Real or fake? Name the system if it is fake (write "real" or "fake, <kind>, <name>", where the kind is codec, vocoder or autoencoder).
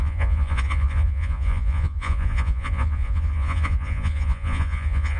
fake, vocoder, Vocos